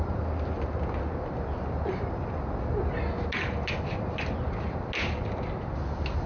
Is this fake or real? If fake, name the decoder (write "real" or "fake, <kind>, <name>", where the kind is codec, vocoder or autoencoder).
real